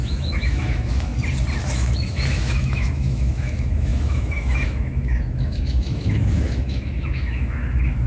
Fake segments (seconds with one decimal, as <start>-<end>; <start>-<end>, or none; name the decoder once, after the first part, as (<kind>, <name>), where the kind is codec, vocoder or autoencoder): 0.0-1.1 (autoencoder, DAC-VAE); 1.6-8.1